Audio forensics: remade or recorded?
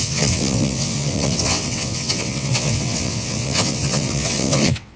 remade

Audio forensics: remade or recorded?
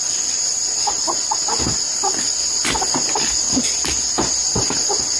recorded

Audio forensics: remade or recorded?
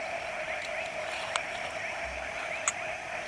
recorded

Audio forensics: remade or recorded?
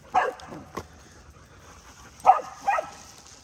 recorded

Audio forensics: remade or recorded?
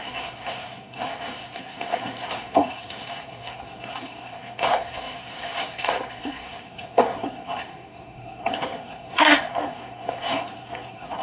remade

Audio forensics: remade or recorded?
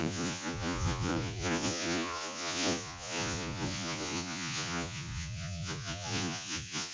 remade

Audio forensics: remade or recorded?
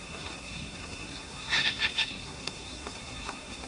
remade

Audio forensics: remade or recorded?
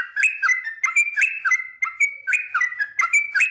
recorded